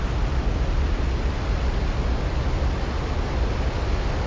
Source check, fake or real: real